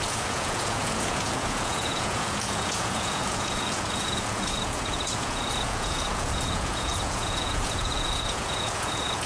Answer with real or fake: fake